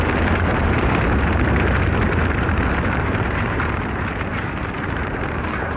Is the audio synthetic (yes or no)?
yes